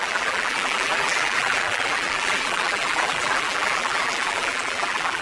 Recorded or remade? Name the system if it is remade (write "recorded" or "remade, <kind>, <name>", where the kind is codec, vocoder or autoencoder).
remade, vocoder, BigVGAN v2